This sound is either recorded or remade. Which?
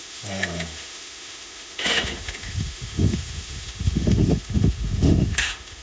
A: remade